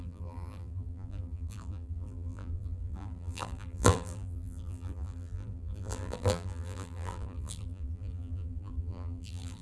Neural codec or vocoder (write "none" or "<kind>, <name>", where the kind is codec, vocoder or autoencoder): vocoder, BigVGAN v2